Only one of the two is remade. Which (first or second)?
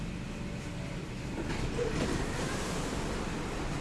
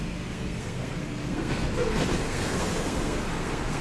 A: second